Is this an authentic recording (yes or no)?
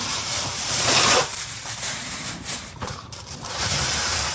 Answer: no